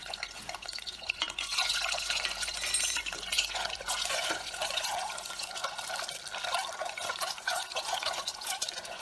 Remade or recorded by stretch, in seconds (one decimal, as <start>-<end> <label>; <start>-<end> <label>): 0.0-5.6 remade; 5.6-6.9 recorded; 6.9-9.0 remade